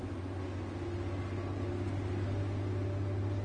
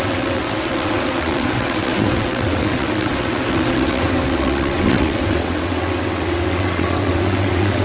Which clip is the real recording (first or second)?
first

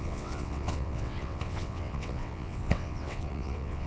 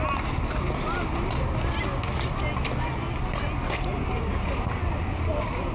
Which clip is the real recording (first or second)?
second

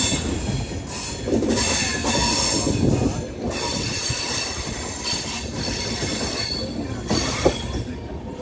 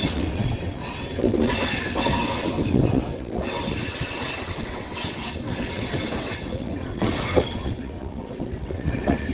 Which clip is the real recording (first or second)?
first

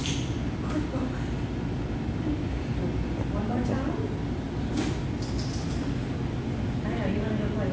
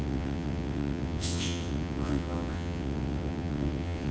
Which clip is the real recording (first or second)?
first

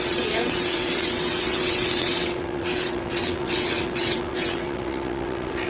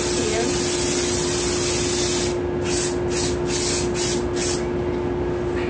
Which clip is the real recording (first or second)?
second